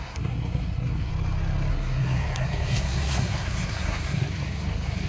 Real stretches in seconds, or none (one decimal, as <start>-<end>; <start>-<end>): 1.1-1.7